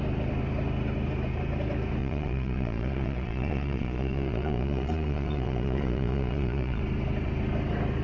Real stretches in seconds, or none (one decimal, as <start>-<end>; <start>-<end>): 0.0-2.0; 6.8-8.0